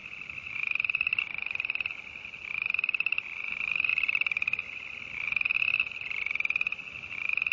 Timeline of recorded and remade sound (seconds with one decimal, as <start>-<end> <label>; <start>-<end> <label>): 0.0-7.5 recorded